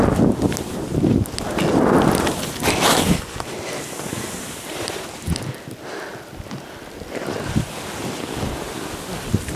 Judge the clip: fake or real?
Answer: real